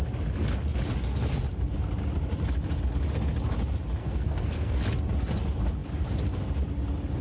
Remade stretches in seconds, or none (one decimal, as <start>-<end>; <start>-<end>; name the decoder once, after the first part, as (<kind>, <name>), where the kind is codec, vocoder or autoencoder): 4.0-4.8 (codec, SNAC)